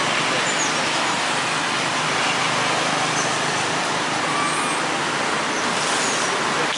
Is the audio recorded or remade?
recorded